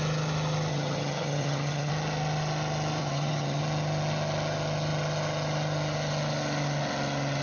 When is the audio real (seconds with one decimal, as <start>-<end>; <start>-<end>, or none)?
0.0-0.7; 1.9-3.0; 3.6-7.4